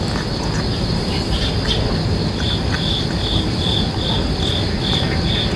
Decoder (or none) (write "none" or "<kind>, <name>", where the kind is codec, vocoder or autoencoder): none